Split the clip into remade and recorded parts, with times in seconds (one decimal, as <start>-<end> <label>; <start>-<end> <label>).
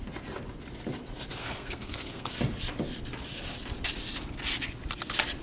0.0-1.4 recorded; 1.4-2.3 remade; 2.3-5.4 recorded